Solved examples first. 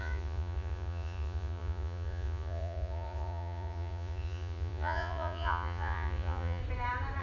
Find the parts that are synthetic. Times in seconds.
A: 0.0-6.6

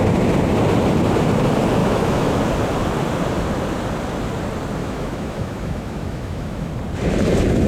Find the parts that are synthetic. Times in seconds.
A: 1.8-2.4; 4.8-6.7

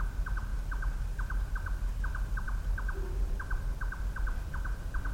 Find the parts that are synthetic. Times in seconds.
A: none

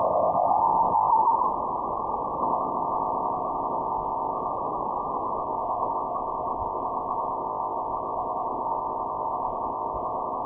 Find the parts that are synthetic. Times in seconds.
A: 0.0-1.1; 2.4-4.5; 5.4-10.5

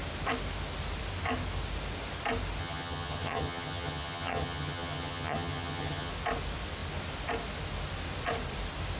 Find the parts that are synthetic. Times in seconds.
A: 2.6-6.1

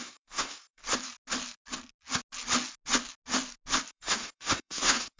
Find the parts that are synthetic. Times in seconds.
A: 0.0-0.8; 3.9-5.2